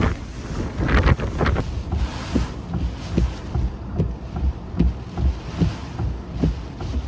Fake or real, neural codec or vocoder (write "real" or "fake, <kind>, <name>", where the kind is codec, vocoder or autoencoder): real